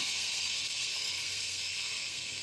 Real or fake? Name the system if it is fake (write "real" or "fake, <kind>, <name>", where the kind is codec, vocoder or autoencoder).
fake, codec, SNAC